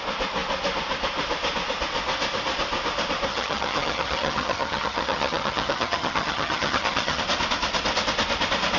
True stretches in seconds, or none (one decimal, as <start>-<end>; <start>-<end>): 0.0-3.3; 7.2-8.8